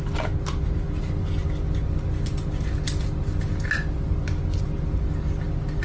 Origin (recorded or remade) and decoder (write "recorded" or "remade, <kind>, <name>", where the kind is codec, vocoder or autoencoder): recorded